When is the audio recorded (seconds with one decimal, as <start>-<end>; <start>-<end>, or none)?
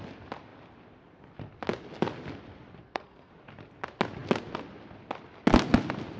0.0-2.8; 3.3-6.2